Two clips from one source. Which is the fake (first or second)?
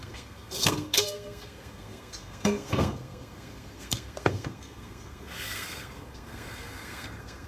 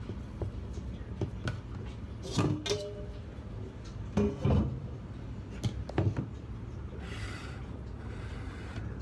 first